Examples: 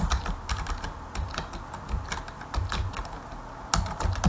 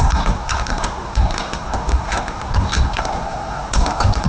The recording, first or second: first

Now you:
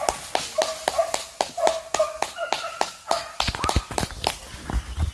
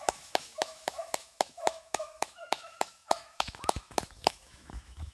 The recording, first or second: first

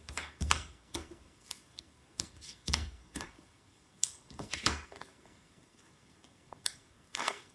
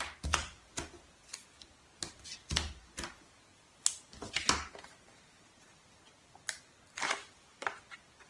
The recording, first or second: second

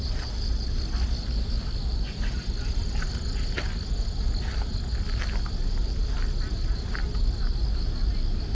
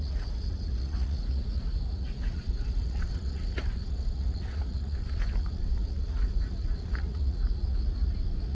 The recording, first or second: first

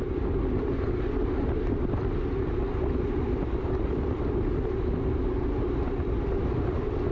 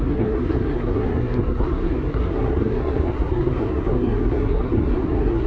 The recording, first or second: first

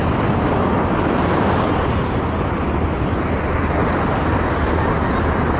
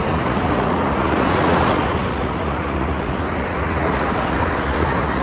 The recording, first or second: first